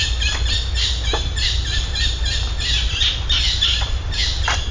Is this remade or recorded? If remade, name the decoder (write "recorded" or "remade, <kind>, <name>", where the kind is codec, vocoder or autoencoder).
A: recorded